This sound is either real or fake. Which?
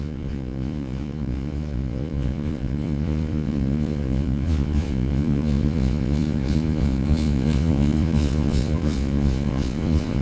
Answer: fake